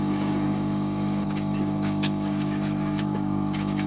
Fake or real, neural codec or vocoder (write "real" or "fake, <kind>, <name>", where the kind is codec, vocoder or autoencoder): fake, codec, DAC